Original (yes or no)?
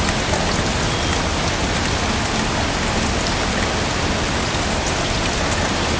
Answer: yes